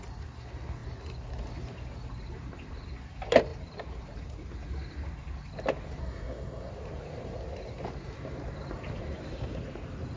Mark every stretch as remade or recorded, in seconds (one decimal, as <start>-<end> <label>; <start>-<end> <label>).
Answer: 0.0-6.0 recorded; 6.0-6.7 remade; 6.7-10.2 recorded